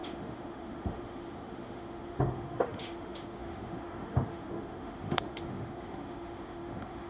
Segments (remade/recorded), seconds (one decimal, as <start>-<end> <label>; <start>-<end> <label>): 0.0-7.1 remade